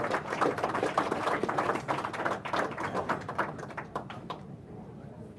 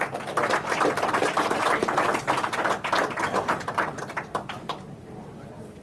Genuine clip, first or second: second